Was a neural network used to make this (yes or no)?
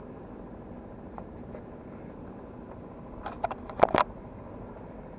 no